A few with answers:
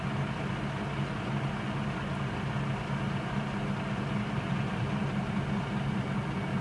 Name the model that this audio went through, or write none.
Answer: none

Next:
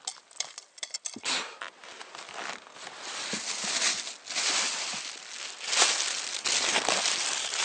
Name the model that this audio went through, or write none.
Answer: none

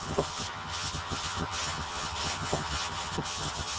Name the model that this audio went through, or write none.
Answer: vocoder, HiFi-GAN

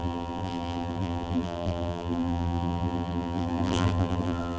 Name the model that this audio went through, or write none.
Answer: vocoder, BigVGAN v2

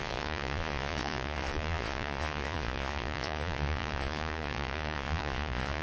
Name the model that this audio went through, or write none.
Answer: vocoder, Vocos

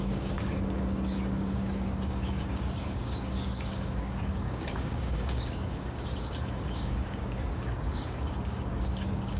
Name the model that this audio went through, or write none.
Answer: codec, DAC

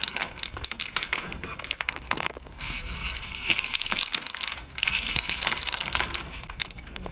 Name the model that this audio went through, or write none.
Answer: codec, SNAC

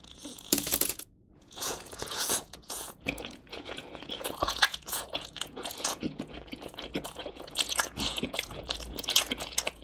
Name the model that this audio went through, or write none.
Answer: vocoder, Vocos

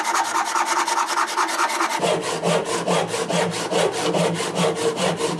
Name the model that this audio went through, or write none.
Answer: none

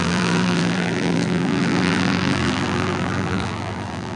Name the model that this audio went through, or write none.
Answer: vocoder, BigVGAN v2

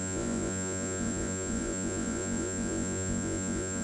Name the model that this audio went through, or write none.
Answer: vocoder, Vocos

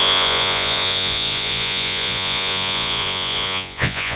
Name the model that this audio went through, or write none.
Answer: vocoder, Vocos